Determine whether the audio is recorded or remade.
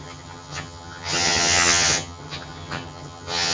remade